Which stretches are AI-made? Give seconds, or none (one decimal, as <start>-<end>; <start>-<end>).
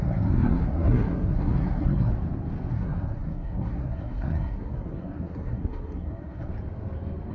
0.0-2.1; 2.7-6.5